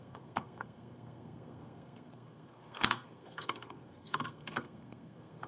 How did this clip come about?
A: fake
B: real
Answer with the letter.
A